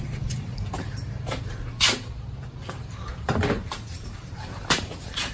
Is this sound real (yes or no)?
no